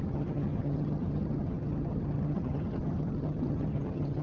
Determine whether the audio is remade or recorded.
remade